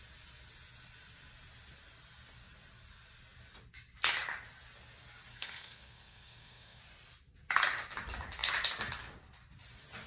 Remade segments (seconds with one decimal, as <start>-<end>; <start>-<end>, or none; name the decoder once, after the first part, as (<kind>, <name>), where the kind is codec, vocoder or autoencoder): 5.3-6.8 (codec, SNAC)